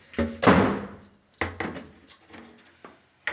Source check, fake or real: real